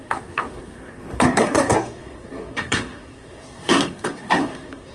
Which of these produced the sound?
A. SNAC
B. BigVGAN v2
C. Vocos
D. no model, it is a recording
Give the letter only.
A